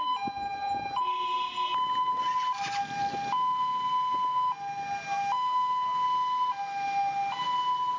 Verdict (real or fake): real